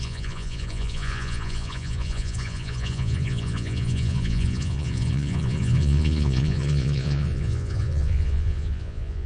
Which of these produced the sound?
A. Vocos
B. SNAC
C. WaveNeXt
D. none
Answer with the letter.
A